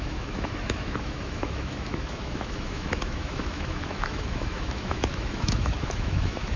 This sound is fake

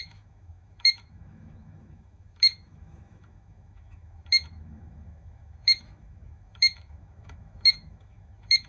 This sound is fake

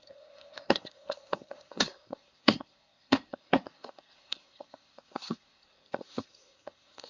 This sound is fake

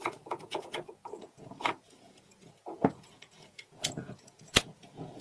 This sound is fake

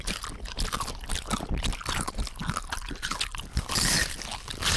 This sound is real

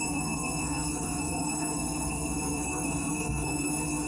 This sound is fake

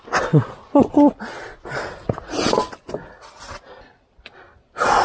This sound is real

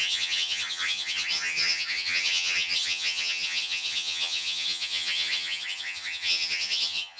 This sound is fake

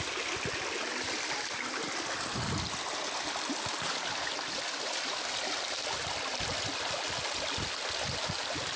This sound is real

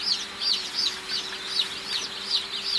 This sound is real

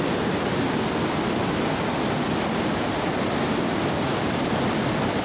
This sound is real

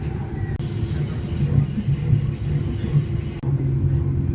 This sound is real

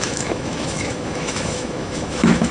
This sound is fake